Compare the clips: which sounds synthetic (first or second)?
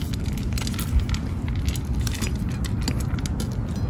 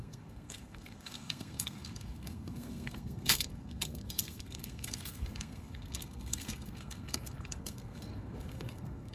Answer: second